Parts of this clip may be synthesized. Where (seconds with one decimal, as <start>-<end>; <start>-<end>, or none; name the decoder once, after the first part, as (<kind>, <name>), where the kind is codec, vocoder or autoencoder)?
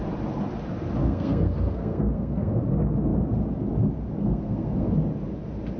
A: 1.0-2.6 (codec, SNAC); 4.2-4.9